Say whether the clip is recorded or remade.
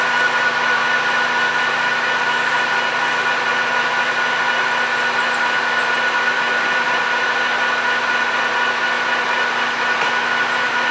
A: recorded